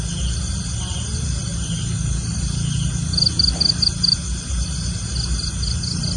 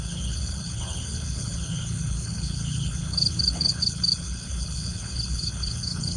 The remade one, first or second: second